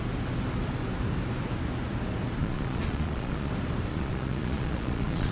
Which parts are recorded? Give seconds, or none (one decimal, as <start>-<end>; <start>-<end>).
0.0-2.4; 3.5-3.9